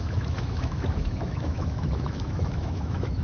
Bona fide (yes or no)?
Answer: no